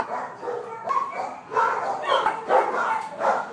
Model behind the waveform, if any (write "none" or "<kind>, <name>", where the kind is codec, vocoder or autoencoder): none